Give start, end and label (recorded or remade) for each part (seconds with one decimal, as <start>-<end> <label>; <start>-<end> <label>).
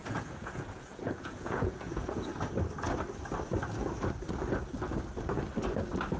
0.0-2.3 remade; 2.3-6.2 recorded